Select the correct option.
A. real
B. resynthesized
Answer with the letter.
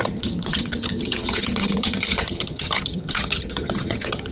B